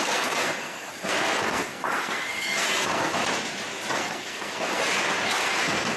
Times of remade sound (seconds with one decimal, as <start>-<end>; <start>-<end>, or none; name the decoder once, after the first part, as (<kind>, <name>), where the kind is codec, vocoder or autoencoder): 0.0-3.2 (codec, SNAC); 3.9-4.8; 5.4-6.0